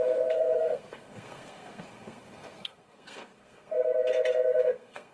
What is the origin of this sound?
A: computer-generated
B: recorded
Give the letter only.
A